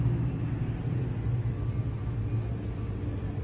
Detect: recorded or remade recorded